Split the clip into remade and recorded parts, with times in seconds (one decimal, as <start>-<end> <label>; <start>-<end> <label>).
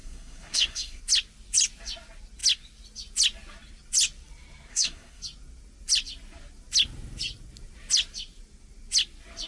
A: 0.0-1.0 remade; 1.0-4.7 recorded; 4.7-5.2 remade; 5.2-9.5 recorded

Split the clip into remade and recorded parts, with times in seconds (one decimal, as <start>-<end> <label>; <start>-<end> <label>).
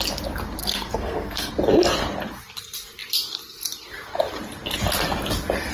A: 0.0-0.6 recorded; 0.6-1.5 remade; 1.5-5.7 recorded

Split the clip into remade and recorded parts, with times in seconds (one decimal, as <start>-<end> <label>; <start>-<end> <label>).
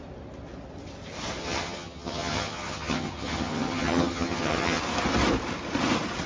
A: 0.0-1.4 recorded; 1.4-4.8 remade; 4.8-6.3 recorded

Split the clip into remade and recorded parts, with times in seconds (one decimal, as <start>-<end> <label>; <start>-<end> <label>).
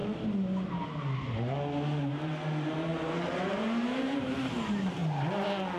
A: 0.0-2.0 recorded; 2.0-5.0 remade; 5.0-5.8 recorded